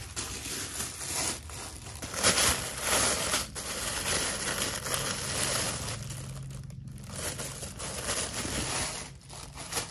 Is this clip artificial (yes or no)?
no